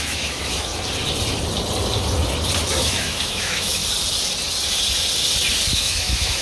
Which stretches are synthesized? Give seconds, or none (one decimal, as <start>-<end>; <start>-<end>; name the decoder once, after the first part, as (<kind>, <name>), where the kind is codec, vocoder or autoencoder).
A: 0.0-0.7 (autoencoder, DAC-VAE); 2.8-3.8; 5.7-6.4